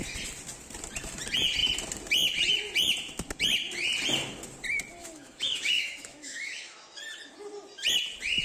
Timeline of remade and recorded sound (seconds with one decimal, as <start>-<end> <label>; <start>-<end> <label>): 0.0-5.0 recorded; 5.0-7.0 remade; 7.0-8.4 recorded